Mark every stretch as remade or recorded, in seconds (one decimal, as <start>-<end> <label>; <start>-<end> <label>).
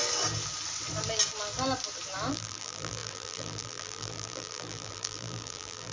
0.0-2.3 recorded; 2.3-5.9 remade